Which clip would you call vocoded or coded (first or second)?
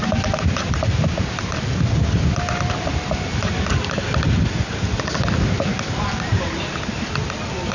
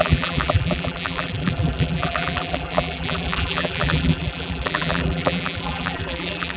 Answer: second